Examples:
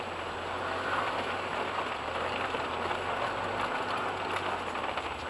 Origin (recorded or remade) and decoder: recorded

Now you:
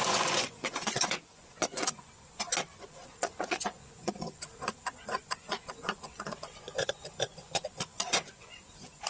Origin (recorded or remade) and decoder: remade, vocoder, Vocos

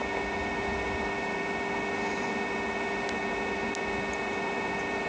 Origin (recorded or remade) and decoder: recorded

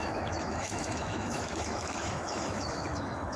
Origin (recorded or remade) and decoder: remade, autoencoder, DAC-VAE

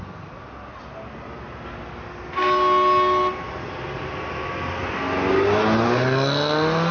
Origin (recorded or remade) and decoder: recorded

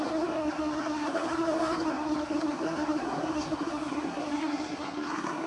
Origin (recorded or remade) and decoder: remade, codec, SNAC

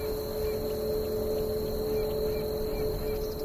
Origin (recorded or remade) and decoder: recorded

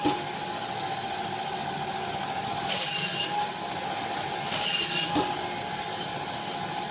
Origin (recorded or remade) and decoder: recorded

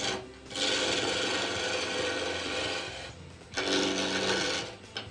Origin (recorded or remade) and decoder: recorded